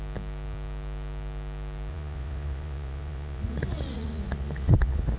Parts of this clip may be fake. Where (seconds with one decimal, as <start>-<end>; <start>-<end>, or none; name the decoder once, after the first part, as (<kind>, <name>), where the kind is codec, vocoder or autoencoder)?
1.9-5.2 (vocoder, Vocos)